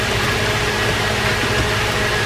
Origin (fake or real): real